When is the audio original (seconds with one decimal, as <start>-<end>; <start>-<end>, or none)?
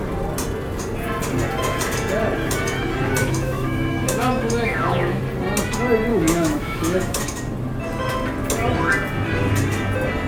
0.0-3.2; 5.2-6.1; 7.2-10.3